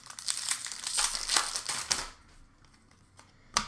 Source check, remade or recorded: recorded